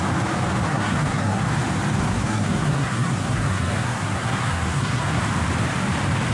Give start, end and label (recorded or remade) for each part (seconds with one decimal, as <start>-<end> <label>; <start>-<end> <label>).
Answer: 0.0-0.7 recorded; 0.7-1.4 remade; 1.4-2.0 recorded; 2.0-5.2 remade; 5.2-6.3 recorded